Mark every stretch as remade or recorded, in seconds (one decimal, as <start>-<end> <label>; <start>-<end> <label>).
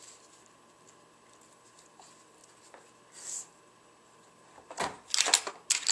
0.0-5.9 recorded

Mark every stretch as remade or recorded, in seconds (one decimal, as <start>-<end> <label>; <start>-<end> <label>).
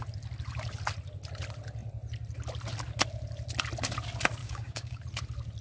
0.0-4.4 recorded; 4.4-5.0 remade; 5.0-5.6 recorded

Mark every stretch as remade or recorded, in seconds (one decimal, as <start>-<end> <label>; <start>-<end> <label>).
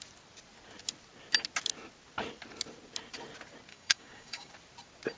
0.0-3.7 recorded; 3.7-4.5 remade; 4.5-5.2 recorded